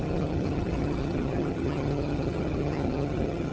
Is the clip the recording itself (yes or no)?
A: no